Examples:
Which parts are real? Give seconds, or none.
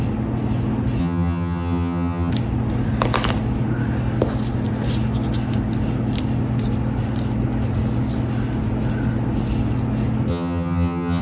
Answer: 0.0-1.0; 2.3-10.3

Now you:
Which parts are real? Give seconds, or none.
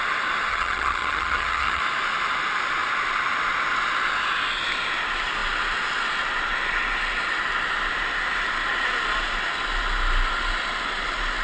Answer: 0.0-0.5; 1.8-11.4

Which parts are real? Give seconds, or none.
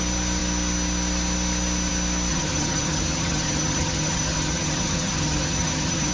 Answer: 0.0-2.3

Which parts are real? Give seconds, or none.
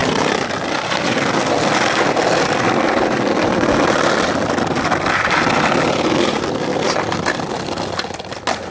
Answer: 0.0-8.7